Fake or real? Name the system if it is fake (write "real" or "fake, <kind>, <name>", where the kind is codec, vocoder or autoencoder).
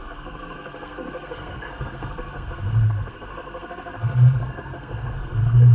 fake, codec, SNAC